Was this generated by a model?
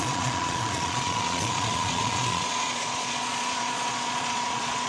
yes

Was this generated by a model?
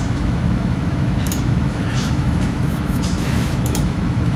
yes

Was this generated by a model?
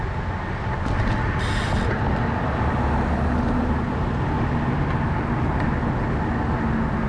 no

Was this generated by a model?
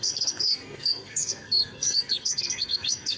yes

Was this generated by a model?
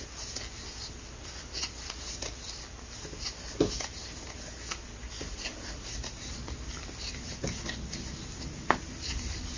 no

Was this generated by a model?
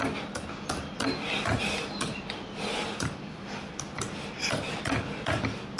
no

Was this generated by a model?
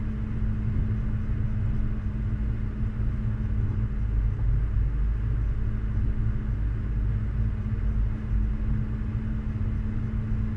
no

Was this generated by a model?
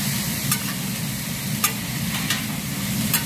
yes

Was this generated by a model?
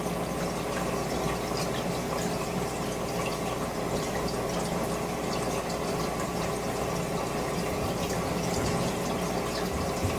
no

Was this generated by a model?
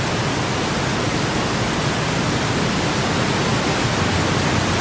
no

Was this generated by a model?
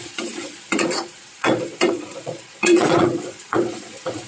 yes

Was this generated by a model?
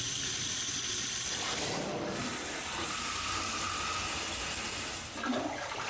no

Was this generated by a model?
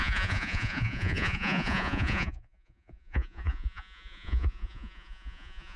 yes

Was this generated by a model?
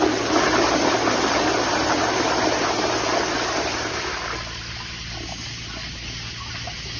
no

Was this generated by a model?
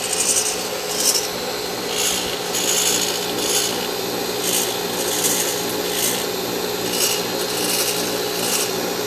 no